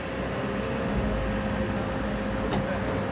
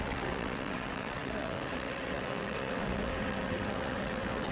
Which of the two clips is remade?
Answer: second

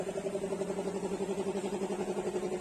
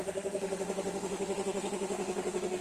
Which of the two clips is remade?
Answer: second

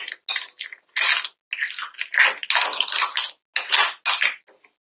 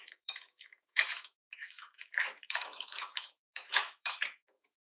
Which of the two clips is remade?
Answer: second